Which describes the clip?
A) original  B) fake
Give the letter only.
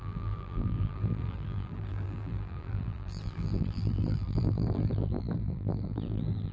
B